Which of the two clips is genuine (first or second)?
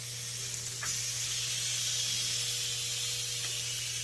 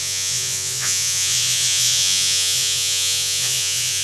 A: first